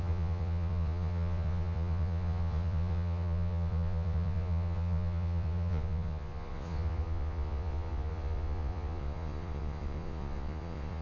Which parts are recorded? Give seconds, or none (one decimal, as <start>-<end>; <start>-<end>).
none